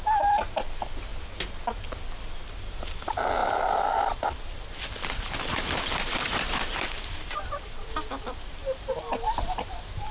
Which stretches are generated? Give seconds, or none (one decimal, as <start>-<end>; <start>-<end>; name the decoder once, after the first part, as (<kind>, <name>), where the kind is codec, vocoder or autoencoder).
3.4-7.6 (vocoder, BigVGAN v2); 8.6-10.1